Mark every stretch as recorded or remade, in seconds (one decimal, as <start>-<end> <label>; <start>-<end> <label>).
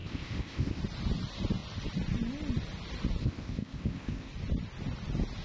0.0-0.8 remade; 0.8-3.2 recorded; 3.2-4.3 remade; 4.3-5.4 recorded